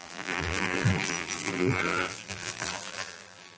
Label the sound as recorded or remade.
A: remade